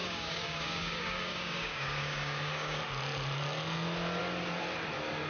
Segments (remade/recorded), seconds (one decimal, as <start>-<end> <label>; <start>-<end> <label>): 0.0-2.8 remade; 2.8-5.3 recorded